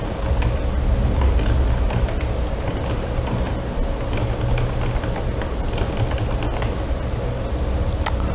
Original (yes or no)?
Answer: yes